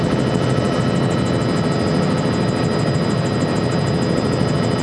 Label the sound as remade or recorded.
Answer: recorded